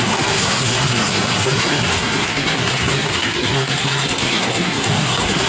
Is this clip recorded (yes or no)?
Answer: no